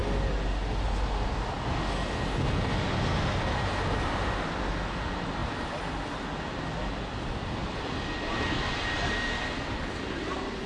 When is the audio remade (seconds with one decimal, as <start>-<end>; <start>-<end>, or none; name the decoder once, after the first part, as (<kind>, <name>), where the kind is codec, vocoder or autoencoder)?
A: none